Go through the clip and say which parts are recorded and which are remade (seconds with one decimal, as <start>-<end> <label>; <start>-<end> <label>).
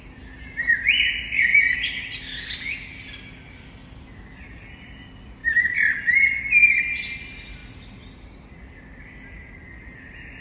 0.0-10.4 recorded